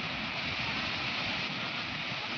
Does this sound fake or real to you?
real